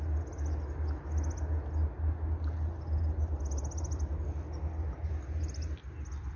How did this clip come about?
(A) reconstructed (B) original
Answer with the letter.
B